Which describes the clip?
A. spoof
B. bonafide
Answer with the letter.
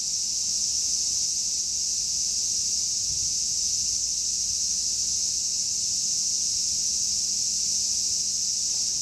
B